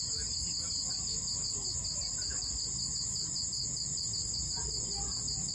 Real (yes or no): yes